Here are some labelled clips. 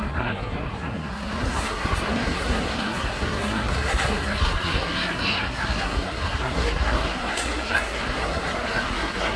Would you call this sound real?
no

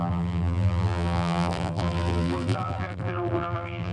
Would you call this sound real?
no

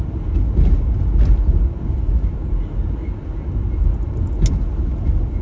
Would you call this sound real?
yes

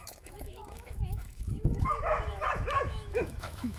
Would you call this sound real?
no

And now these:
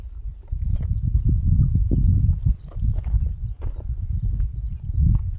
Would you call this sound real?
yes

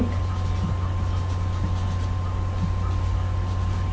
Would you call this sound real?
yes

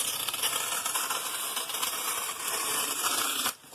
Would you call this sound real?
no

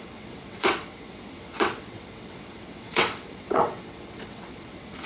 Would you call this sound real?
no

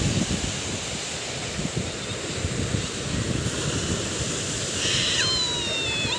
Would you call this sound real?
yes